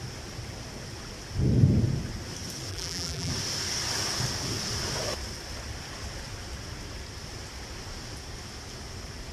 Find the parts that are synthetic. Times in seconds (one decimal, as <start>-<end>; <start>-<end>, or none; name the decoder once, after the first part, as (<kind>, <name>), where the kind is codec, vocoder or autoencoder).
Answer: 2.7-3.3 (vocoder, BigVGAN v2)